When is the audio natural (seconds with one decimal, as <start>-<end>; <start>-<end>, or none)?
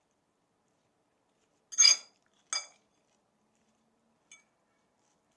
0.0-5.4